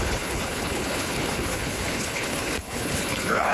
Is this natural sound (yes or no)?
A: no